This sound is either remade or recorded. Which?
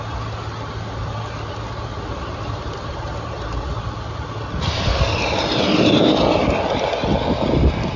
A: recorded